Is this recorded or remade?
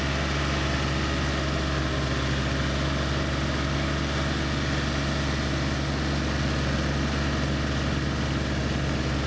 recorded